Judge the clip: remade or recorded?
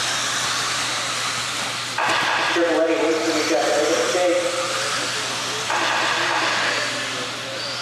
recorded